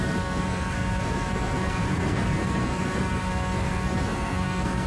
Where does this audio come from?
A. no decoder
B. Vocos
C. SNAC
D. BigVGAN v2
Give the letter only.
C